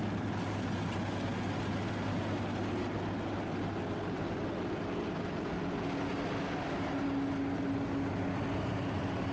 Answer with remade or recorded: recorded